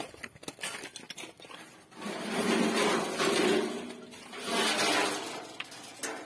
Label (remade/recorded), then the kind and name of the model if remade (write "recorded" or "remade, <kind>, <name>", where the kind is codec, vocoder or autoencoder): recorded